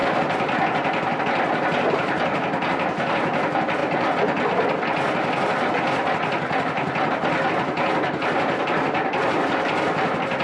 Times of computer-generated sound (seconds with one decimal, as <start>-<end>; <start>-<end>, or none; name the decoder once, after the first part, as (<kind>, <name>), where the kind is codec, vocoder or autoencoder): 0.0-1.2 (vocoder, BigVGAN v2)